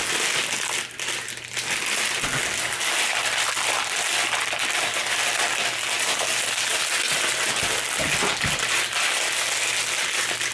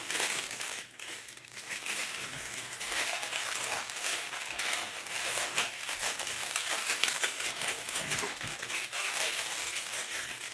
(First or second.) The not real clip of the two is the second